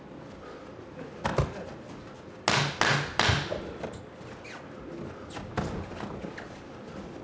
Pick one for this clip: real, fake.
real